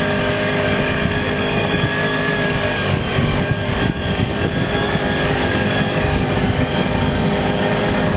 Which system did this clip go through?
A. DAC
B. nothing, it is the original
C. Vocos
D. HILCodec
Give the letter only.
A